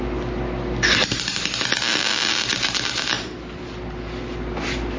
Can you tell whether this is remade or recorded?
recorded